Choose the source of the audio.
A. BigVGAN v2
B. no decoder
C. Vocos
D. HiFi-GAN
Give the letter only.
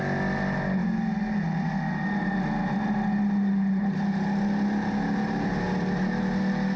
B